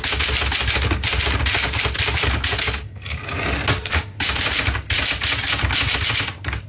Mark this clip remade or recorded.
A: recorded